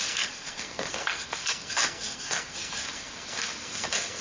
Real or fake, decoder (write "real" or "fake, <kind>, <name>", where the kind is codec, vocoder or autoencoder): fake, codec, SNAC